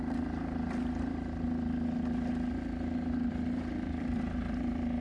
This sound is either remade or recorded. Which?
recorded